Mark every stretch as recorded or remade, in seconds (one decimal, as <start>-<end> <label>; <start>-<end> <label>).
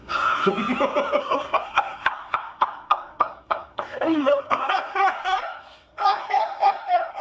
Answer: 0.0-0.5 remade; 0.5-1.2 recorded; 1.2-7.2 remade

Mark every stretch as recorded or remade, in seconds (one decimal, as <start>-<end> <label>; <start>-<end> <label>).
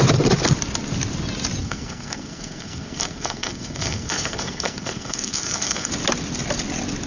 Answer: 0.0-1.6 recorded; 1.6-5.9 remade; 5.9-7.1 recorded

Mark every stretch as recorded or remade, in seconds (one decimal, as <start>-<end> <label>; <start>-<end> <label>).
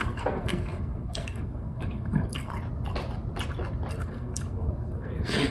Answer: 0.0-2.5 remade; 2.5-3.9 recorded; 3.9-5.5 remade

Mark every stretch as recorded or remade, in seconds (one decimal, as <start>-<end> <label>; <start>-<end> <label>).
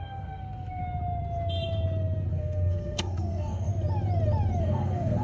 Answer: 0.0-0.8 remade; 0.8-2.3 recorded; 2.3-3.7 remade; 3.7-4.6 recorded; 4.6-5.2 remade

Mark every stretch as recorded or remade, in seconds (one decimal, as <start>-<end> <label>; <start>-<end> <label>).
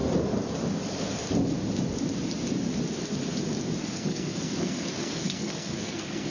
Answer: 0.0-3.8 recorded; 3.8-6.3 remade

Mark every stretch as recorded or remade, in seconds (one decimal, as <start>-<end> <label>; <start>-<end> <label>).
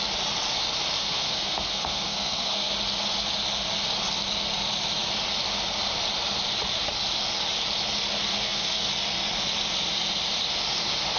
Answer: 0.0-1.0 recorded; 1.0-2.7 remade; 2.7-8.3 recorded; 8.3-8.9 remade; 8.9-11.2 recorded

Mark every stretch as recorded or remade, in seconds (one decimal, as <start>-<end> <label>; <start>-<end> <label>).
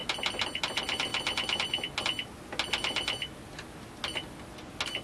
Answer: 0.0-5.0 recorded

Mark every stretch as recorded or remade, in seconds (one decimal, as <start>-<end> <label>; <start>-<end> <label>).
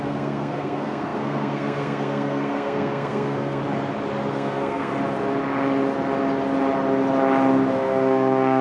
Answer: 0.0-3.6 remade; 3.6-4.3 recorded; 4.3-4.9 remade; 4.9-7.7 recorded; 7.7-8.6 remade